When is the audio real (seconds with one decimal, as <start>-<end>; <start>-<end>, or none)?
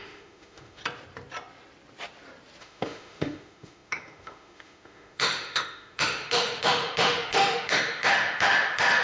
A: 0.8-2.6